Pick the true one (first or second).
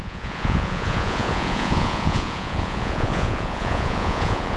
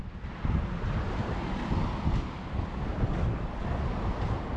second